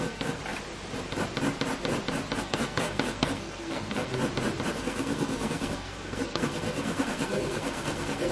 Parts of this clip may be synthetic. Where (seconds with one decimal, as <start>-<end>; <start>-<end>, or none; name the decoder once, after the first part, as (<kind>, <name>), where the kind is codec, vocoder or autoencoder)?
0.0-0.4 (codec, SNAC); 2.4-4.1; 4.7-8.3